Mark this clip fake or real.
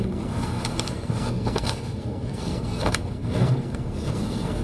fake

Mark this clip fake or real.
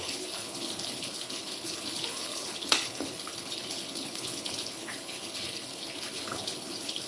fake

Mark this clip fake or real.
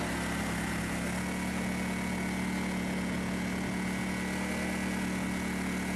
real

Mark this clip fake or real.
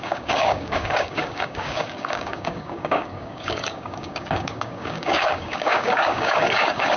fake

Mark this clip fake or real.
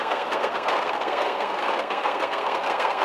fake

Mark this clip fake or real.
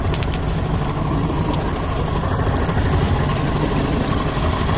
real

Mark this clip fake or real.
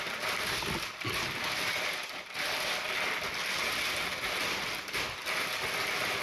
real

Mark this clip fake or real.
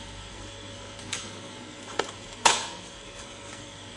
fake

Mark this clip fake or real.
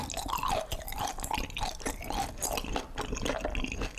real